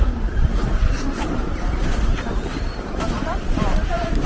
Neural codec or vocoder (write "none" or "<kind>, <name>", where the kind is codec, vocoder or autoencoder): vocoder, BigVGAN v2